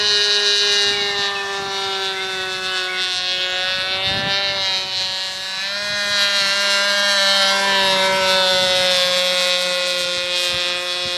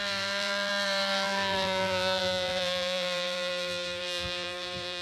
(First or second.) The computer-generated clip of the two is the second